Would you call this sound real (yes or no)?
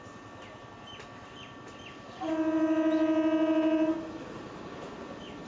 yes